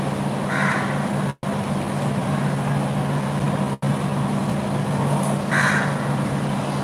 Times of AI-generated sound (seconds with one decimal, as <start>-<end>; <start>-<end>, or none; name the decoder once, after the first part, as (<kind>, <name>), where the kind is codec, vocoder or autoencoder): 3.9-4.4 (vocoder, BigVGAN v2)